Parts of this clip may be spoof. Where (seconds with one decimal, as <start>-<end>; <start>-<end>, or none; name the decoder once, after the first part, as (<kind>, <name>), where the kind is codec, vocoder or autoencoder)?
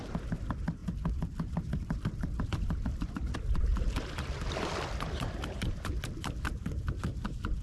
0.8-3.1 (vocoder, BigVGAN v2); 3.7-7.0